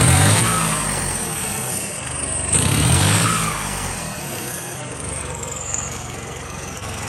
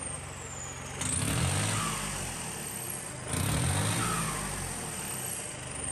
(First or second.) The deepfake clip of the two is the first